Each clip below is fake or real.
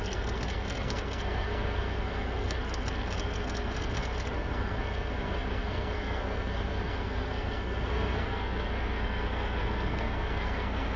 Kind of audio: fake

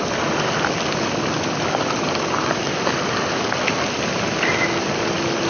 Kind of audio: real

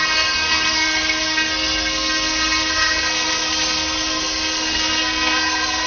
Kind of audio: fake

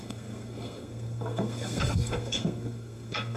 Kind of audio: fake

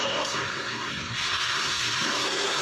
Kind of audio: fake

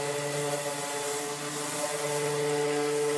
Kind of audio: real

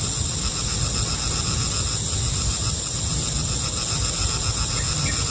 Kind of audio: real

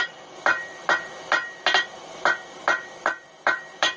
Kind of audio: real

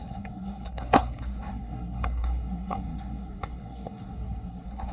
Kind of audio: fake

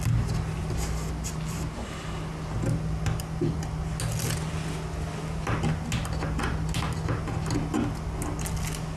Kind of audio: real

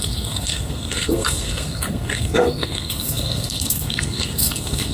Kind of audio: fake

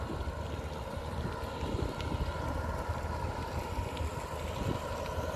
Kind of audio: real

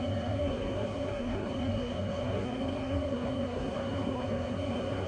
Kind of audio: fake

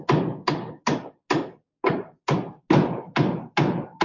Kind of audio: real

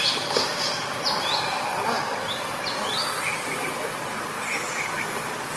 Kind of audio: real